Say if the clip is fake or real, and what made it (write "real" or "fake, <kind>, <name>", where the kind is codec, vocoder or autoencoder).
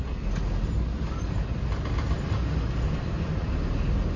real